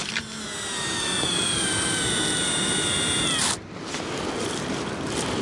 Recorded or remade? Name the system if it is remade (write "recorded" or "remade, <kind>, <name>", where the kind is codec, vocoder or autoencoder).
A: recorded